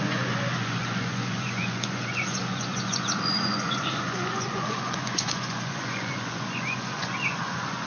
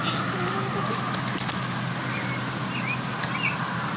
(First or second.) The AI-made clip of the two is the first